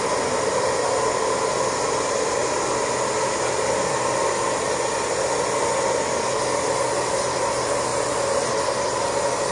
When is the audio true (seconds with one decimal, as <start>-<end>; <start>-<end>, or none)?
0.0-9.5